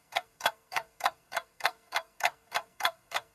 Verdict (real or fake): fake